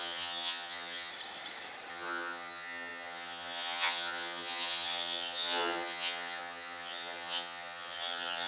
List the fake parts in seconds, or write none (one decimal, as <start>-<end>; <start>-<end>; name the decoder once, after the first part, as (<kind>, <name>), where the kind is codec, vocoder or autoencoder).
0.0-1.1 (vocoder, HiFi-GAN); 1.9-8.5